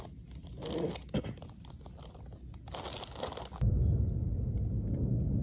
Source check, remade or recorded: recorded